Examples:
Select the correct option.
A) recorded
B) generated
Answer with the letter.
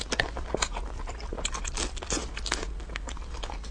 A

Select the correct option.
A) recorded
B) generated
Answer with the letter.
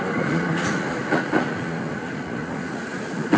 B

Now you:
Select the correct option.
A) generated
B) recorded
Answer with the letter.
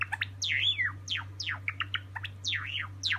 B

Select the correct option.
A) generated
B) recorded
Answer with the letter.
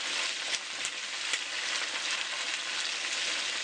B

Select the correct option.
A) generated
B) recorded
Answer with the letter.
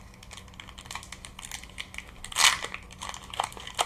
B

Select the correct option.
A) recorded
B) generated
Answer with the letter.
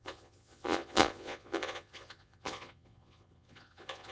B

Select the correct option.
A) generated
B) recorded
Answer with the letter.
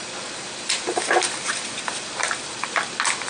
B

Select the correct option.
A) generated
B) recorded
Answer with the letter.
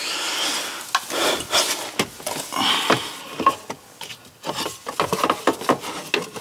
B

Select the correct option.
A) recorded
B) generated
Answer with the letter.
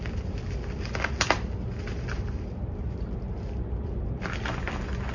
A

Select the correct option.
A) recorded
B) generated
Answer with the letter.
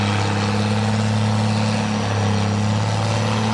A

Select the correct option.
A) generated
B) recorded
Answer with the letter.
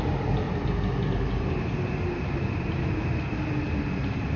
B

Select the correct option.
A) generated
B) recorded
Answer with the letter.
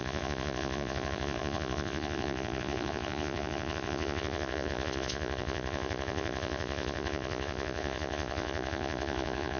A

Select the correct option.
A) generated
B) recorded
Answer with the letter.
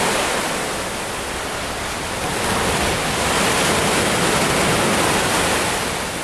B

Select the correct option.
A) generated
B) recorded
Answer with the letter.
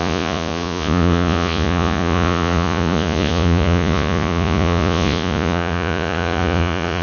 A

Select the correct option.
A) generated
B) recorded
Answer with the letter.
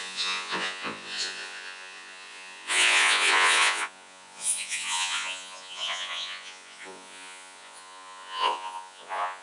A